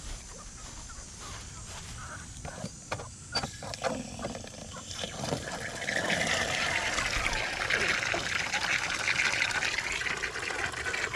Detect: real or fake real